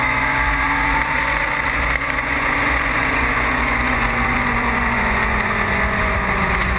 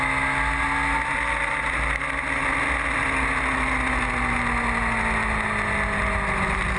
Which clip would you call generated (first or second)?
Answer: first